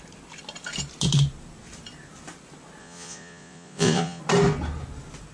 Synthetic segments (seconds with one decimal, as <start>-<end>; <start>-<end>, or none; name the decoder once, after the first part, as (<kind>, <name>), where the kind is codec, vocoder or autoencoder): 2.8-4.2 (vocoder, Vocos)